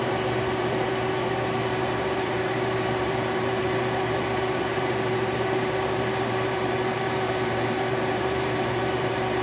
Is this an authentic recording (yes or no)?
no